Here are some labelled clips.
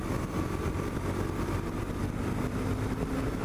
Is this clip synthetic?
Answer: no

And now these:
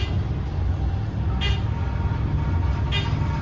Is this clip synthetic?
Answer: no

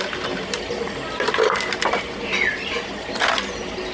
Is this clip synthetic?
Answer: no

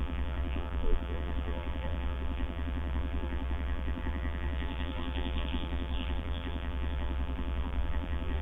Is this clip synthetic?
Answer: yes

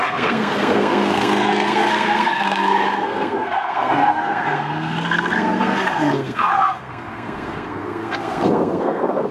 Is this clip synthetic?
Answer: yes